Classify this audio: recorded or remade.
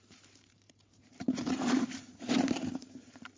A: remade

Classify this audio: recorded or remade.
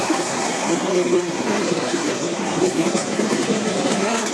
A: remade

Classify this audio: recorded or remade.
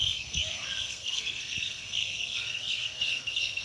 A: remade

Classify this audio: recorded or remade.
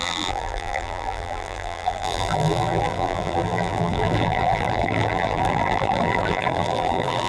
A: remade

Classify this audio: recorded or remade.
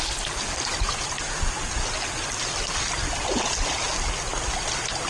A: recorded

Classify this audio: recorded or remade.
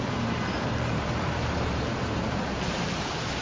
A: remade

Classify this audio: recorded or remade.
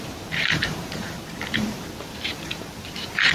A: remade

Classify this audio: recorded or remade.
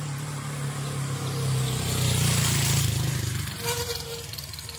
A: recorded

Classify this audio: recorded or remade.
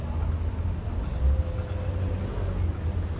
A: recorded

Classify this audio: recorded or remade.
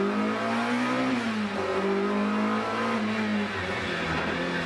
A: recorded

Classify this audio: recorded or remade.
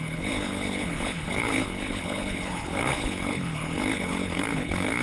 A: remade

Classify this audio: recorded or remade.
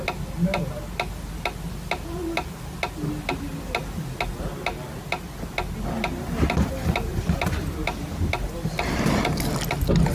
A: recorded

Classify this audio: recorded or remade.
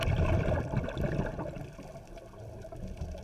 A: recorded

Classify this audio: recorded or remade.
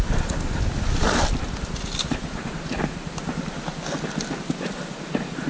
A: recorded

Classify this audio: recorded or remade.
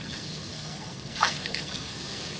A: remade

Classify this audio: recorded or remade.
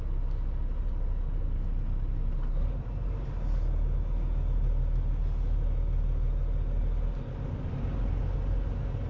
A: recorded